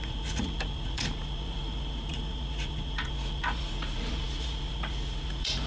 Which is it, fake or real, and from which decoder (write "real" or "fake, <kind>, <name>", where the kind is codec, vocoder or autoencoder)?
fake, vocoder, Vocos